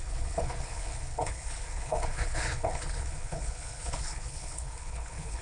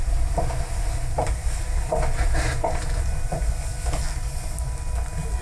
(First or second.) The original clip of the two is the second